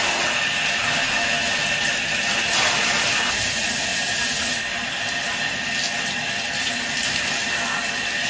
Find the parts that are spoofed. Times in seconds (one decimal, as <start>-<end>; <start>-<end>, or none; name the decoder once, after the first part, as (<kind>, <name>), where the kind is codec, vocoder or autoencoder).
none